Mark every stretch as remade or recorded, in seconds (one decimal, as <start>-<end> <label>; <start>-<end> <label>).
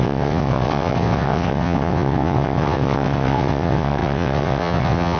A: 0.0-5.2 remade